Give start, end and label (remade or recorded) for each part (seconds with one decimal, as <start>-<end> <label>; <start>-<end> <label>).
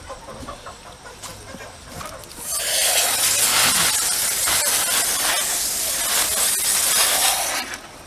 0.0-8.1 recorded